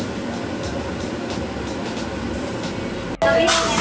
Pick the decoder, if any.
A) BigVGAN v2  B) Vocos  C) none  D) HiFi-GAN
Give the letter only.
C